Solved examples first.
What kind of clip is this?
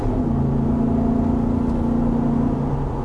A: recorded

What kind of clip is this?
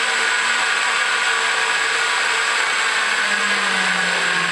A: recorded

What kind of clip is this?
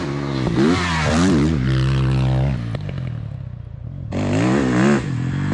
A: recorded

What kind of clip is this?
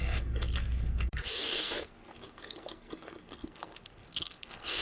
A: remade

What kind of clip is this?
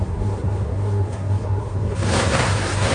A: remade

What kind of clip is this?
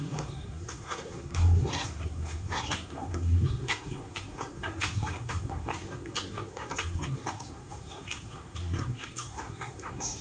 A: remade